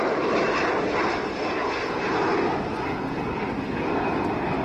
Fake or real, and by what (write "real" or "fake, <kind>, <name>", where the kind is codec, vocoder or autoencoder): real